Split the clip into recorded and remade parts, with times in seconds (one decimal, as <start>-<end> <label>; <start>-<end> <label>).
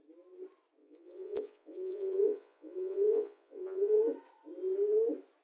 0.0-0.8 recorded; 0.8-4.0 remade; 4.0-5.4 recorded